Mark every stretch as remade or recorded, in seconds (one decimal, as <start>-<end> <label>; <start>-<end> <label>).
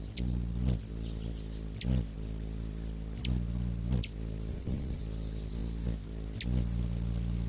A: 0.0-4.5 recorded; 4.5-5.0 remade; 5.0-7.5 recorded